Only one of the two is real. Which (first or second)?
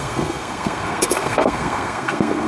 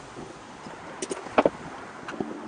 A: second